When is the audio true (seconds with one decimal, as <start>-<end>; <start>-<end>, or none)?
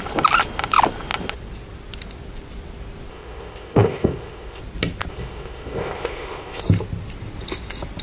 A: 0.0-3.1; 4.6-5.1; 6.6-8.0